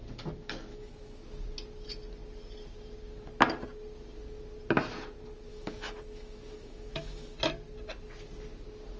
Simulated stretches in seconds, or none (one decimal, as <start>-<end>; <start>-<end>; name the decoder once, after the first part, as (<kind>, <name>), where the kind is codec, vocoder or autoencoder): 0.7-1.2 (autoencoder, DAC-VAE); 5.5-7.4